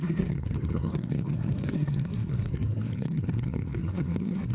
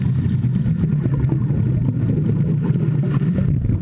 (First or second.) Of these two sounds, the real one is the second